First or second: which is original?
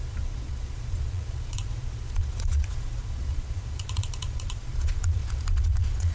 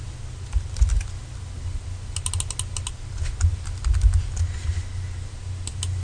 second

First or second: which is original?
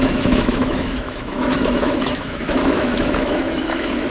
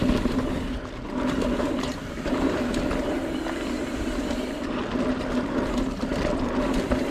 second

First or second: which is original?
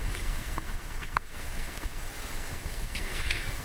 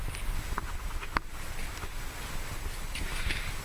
second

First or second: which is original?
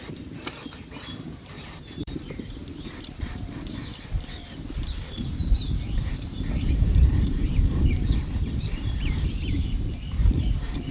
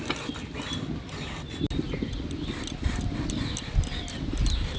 second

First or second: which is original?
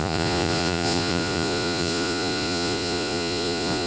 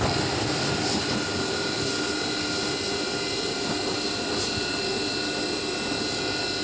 second